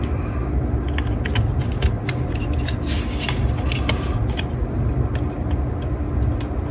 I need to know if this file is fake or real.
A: real